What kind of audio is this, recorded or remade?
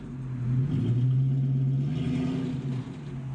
recorded